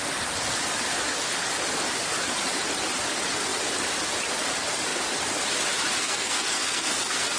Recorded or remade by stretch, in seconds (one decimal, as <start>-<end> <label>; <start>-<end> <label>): 0.0-6.0 recorded; 6.0-7.4 remade